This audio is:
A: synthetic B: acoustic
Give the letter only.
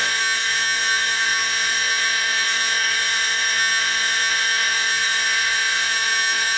A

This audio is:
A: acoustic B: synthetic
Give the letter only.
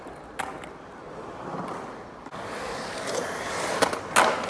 A